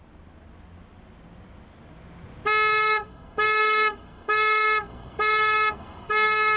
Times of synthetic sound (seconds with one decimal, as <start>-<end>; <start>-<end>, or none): 2.7-6.6